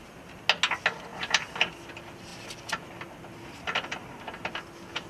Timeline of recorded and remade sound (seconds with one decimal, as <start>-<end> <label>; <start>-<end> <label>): 0.0-1.1 recorded; 1.1-1.8 remade; 1.8-5.1 recorded